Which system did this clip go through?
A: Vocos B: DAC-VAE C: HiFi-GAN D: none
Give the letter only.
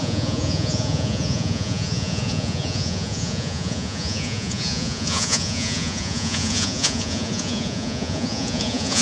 A